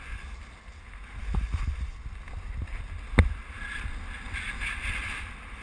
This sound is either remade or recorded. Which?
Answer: recorded